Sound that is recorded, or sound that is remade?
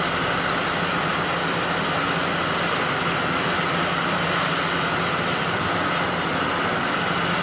recorded